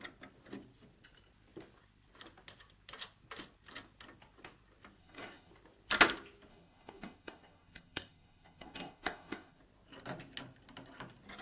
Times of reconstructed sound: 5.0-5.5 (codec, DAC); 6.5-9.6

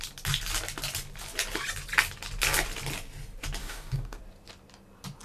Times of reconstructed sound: 3.6-4.2 (codec, DAC)

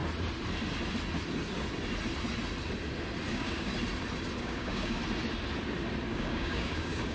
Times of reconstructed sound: 3.3-3.7 (codec, DAC); 4.4-5.0; 6.1-7.1

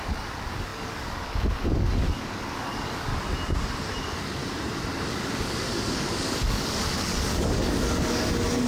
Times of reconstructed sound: 0.0-3.1 (codec, DAC); 4.0-4.4; 5.1-8.7

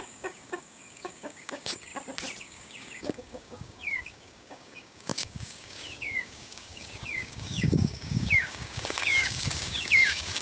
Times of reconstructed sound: 0.0-1.9 (codec, DAC); 2.4-10.4